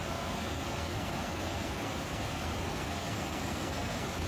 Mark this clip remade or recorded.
remade